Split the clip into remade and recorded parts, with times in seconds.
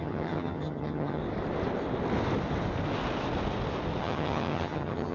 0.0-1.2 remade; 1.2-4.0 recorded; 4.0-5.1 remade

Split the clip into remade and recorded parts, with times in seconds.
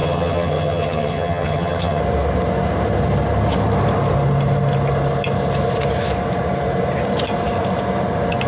0.0-2.0 remade; 2.0-8.5 recorded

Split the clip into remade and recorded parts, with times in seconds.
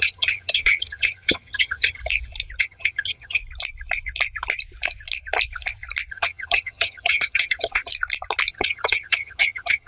0.0-2.0 remade; 2.0-2.6 recorded; 2.6-3.4 remade; 3.4-6.1 recorded; 6.1-7.9 remade; 7.9-8.5 recorded; 8.5-9.9 remade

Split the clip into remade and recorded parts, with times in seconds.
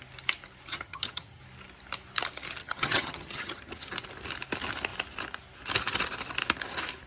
0.0-0.7 recorded; 0.7-1.4 remade; 1.4-2.6 recorded; 2.6-3.9 remade; 3.9-7.1 recorded